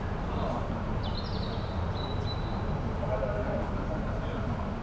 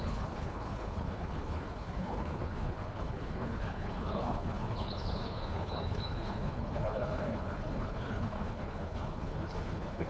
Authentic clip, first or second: first